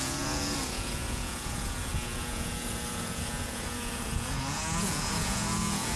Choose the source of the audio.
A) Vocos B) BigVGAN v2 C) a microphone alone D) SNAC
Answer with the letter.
A